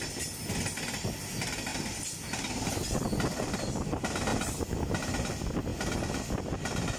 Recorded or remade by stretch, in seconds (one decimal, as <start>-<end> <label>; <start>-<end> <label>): 0.0-4.3 recorded; 4.3-5.0 remade; 5.0-7.0 recorded